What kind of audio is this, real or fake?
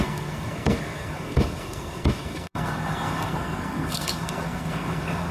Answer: fake